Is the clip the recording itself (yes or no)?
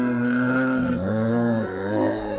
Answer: no